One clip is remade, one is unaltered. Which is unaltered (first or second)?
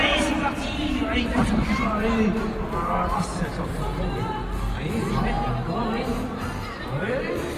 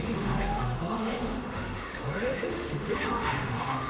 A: first